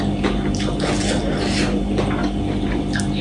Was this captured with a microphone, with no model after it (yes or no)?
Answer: yes